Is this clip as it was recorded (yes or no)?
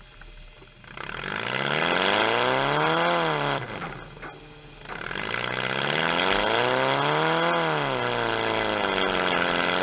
yes